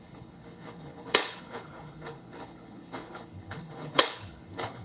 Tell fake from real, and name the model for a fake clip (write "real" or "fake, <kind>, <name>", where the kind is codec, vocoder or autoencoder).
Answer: fake, codec, HILCodec